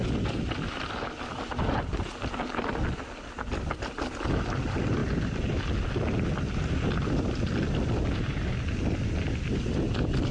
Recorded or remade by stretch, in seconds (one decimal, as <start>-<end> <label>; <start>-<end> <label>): 0.0-10.3 recorded

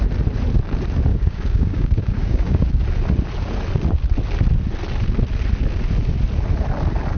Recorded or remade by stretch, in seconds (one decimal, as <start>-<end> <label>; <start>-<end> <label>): 0.0-1.1 recorded; 1.1-2.8 remade; 2.8-7.2 recorded

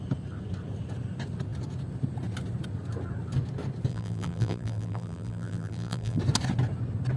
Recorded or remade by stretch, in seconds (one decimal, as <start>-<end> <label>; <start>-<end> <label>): 0.0-3.9 recorded; 3.9-6.2 remade; 6.2-7.2 recorded

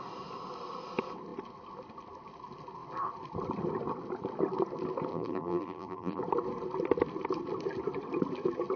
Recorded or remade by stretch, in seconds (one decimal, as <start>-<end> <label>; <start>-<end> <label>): 0.0-5.1 recorded; 5.1-6.2 remade; 6.2-8.8 recorded